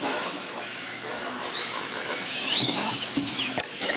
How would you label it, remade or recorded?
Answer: remade